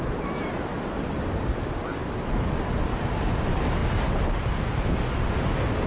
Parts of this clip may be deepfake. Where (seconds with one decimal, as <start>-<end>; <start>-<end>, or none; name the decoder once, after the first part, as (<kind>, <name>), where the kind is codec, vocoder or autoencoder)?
none